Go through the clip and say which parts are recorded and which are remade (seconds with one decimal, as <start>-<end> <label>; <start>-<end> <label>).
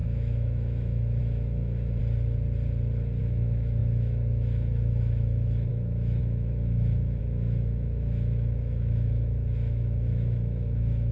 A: 0.0-2.0 remade; 2.0-3.2 recorded; 3.2-11.1 remade